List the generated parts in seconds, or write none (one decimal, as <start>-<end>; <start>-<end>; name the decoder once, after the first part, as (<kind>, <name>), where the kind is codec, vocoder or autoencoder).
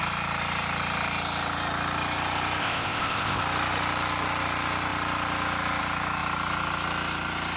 2.6-3.4 (codec, ZipCodec)